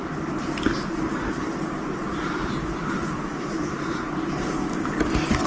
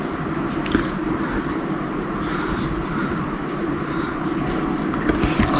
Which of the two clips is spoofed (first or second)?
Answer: second